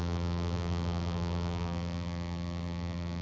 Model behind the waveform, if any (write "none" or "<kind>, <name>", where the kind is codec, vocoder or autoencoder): vocoder, BigVGAN v2